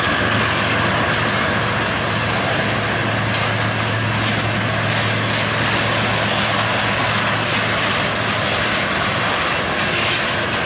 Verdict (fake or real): real